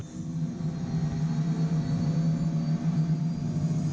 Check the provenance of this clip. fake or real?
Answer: real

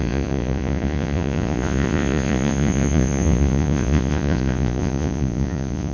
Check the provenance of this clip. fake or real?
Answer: fake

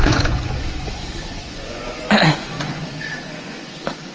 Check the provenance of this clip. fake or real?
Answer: fake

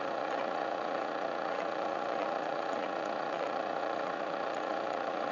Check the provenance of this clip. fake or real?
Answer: fake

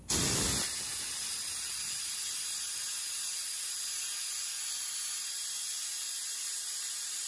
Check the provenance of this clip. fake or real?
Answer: real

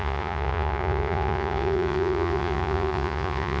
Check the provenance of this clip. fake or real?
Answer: fake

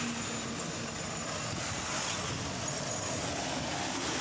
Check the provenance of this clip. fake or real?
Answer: real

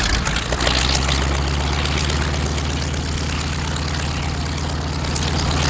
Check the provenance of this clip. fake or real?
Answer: real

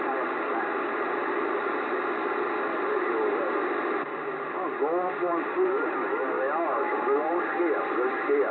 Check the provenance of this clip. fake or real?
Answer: real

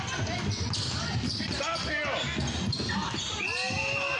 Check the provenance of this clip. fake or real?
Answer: real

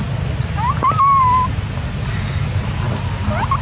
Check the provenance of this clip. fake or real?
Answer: real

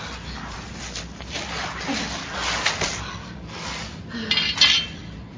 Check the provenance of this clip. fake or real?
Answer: real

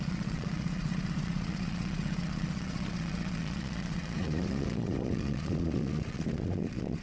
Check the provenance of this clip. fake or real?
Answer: fake